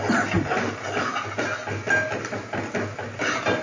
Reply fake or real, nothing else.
real